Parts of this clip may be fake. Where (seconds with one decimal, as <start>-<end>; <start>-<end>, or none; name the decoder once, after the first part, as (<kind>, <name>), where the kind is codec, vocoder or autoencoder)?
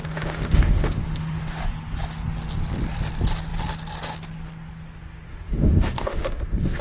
0.0-1.6 (autoencoder, DAC-VAE); 5.3-6.8